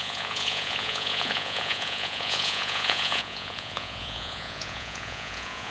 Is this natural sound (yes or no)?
no